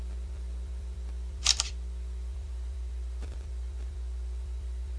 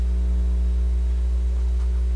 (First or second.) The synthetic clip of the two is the first